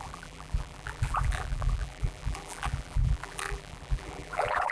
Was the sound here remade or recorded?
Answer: remade